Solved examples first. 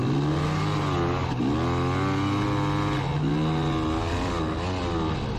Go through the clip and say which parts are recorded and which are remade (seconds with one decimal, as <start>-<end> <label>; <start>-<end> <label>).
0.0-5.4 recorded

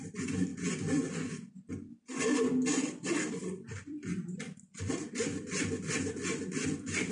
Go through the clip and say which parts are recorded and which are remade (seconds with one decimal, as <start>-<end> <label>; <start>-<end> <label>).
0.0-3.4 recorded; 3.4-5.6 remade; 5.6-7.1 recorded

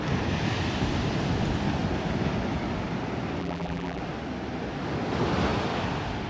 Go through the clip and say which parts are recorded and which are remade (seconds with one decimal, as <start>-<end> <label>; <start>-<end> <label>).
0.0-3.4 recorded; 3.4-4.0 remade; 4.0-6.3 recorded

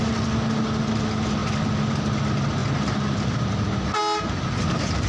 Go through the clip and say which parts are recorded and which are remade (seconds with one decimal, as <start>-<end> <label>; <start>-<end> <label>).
0.0-2.6 recorded; 2.6-3.5 remade; 3.5-5.1 recorded